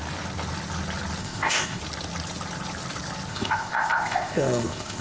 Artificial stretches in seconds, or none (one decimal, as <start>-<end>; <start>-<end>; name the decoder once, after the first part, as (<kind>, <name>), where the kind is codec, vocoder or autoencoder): 1.2-1.8 (codec, ZipCodec); 3.3-5.0